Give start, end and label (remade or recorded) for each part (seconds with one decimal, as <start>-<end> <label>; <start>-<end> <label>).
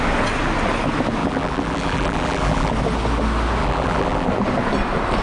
0.0-1.2 recorded; 1.2-2.7 remade; 2.7-3.6 recorded; 3.6-4.3 remade; 4.3-5.2 recorded